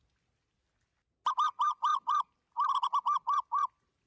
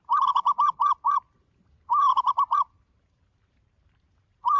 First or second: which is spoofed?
second